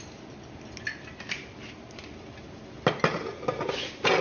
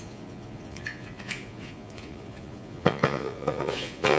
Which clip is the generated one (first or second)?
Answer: second